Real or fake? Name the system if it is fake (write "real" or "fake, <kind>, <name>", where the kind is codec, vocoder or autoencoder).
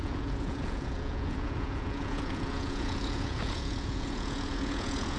fake, vocoder, Vocos